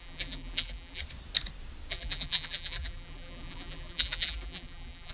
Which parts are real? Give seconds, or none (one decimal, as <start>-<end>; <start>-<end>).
1.0-1.9